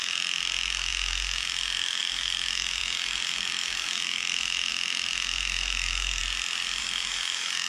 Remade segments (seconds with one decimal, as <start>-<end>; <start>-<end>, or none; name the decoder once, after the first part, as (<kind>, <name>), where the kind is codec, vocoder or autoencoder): 0.0-6.2 (autoencoder, DAC-VAE); 6.8-7.7